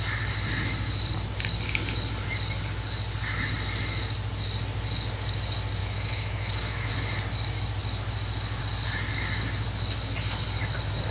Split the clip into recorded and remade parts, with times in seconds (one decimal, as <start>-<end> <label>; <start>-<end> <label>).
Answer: 0.0-5.8 recorded; 5.8-6.9 remade; 6.9-11.1 recorded